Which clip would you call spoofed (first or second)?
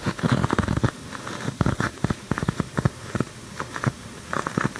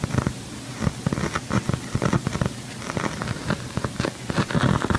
first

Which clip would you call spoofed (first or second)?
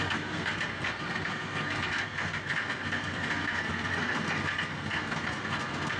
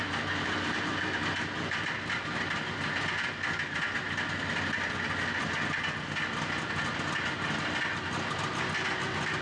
first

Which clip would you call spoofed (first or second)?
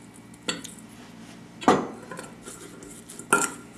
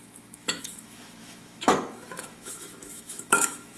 second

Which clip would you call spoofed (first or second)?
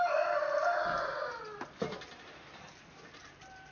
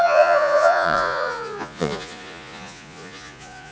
second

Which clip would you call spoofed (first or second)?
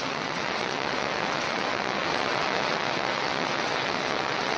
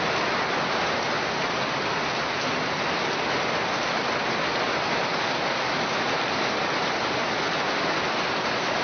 first